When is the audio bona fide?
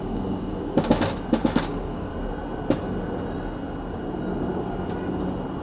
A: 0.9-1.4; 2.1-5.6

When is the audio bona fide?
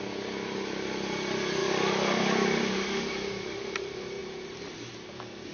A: 0.0-1.6; 3.7-5.5